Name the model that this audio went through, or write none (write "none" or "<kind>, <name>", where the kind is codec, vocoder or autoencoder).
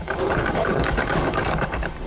codec, DAC